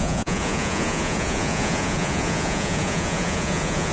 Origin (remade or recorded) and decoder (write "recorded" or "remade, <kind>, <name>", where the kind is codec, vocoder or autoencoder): remade, vocoder, Vocos